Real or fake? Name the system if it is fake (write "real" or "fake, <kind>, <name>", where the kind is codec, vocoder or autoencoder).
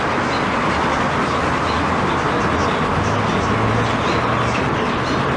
real